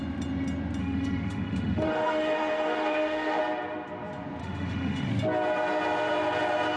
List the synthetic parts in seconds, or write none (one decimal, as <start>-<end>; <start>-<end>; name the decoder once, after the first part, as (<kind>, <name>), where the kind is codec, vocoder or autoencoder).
0.8-3.4 (autoencoder, DAC-VAE); 4.4-5.1